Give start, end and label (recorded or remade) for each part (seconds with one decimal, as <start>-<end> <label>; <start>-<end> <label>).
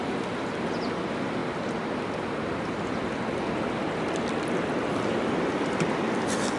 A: 0.0-6.6 recorded